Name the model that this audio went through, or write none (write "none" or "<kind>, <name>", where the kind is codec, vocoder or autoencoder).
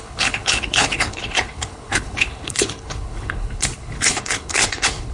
codec, HILCodec